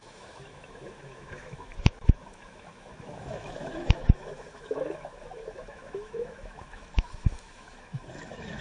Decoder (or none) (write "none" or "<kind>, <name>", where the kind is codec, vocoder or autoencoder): autoencoder, DAC-VAE